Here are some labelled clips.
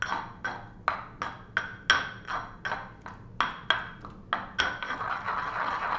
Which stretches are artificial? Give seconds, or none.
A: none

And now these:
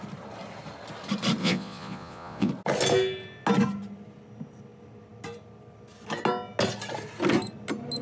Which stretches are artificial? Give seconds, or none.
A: 1.4-2.5

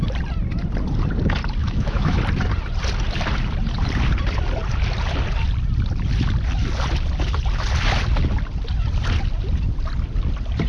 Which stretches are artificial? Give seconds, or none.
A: 1.6-2.2

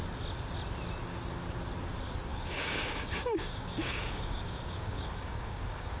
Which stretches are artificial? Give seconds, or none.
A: 2.3-6.0

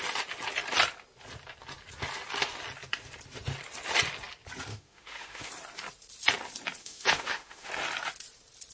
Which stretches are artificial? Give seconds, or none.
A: 4.7-5.5; 6.8-7.7

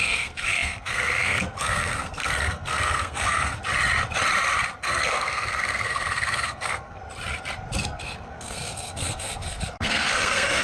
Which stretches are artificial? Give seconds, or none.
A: 0.0-3.6; 4.8-7.0; 7.8-10.6